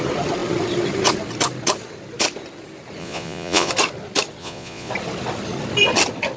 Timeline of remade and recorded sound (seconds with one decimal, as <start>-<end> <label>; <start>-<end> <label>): 0.0-3.0 recorded; 3.0-3.7 remade; 3.7-4.4 recorded; 4.4-4.9 remade; 4.9-6.4 recorded